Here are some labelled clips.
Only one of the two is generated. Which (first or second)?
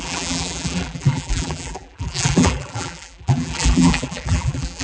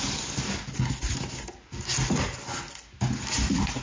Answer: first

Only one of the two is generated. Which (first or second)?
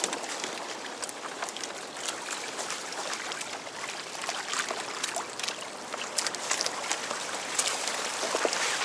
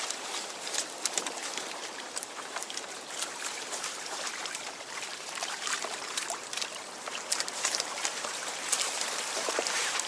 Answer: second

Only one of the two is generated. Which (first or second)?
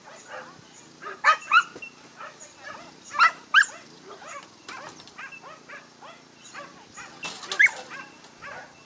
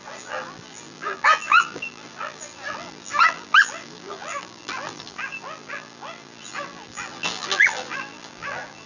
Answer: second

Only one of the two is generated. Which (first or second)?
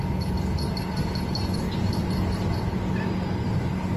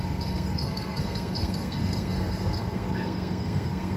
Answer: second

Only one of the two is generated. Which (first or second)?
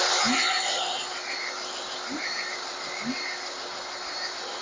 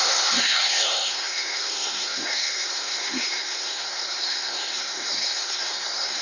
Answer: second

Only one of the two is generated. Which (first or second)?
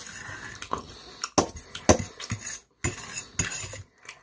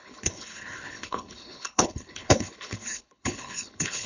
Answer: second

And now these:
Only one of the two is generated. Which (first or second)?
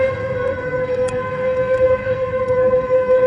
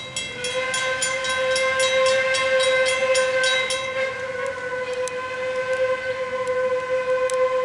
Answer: first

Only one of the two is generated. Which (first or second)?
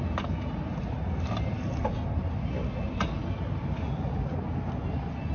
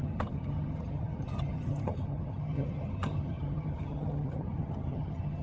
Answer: second